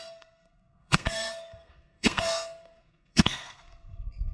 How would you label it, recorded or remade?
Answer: remade